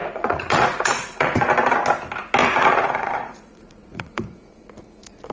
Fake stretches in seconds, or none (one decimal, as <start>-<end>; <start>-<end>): 0.0-1.5; 2.4-5.3